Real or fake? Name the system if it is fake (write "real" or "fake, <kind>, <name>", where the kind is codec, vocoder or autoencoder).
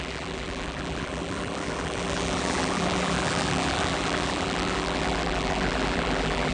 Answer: fake, vocoder, BigVGAN v2